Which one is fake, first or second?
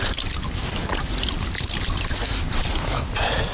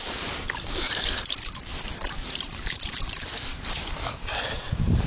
second